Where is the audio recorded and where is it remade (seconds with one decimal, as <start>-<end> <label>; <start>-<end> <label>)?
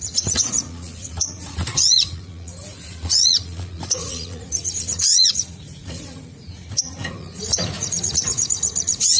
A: 0.0-9.2 remade